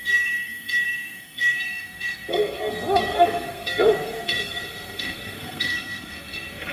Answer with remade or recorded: remade